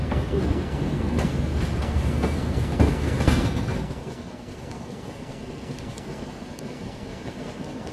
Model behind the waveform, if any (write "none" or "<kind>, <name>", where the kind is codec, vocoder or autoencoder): codec, SNAC